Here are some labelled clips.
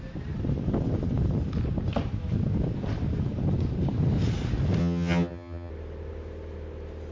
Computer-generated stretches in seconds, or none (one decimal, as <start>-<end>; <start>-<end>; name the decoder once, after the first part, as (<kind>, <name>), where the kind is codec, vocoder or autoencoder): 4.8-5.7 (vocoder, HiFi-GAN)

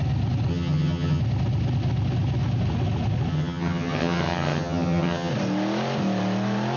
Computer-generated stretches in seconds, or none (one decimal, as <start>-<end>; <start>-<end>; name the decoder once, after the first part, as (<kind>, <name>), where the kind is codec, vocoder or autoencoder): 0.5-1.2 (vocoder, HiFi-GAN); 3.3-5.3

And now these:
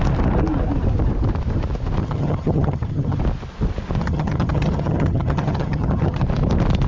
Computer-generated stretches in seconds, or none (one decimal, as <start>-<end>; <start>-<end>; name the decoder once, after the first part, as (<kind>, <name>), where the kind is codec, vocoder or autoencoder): 2.0-3.2 (vocoder, HiFi-GAN); 4.0-6.2

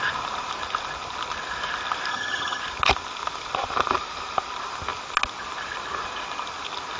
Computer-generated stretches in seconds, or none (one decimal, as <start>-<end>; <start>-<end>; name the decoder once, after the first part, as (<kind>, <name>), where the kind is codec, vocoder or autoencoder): 2.1-2.6 (vocoder, HiFi-GAN)